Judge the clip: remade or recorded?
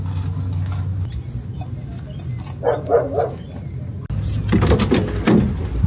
recorded